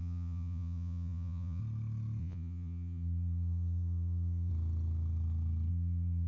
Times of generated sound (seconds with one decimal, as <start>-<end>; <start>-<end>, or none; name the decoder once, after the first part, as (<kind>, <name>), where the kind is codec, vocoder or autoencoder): 0.0-1.6 (vocoder, Vocos); 2.2-4.5; 5.7-6.3